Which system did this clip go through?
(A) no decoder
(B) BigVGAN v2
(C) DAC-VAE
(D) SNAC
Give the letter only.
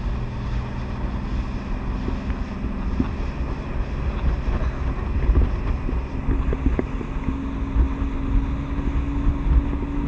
A